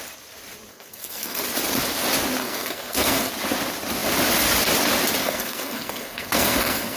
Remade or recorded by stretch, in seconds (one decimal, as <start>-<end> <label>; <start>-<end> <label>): 0.0-0.7 recorded; 0.7-1.4 remade; 1.4-2.4 recorded; 2.4-3.3 remade; 3.3-5.2 recorded; 5.2-7.0 remade